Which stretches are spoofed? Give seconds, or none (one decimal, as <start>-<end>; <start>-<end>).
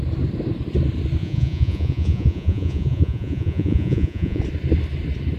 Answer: 1.2-4.4